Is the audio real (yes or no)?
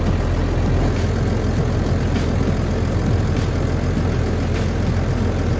yes